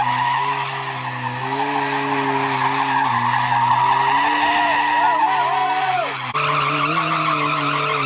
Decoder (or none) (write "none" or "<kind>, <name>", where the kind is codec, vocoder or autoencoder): none